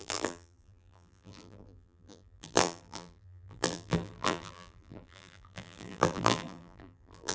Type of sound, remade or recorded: remade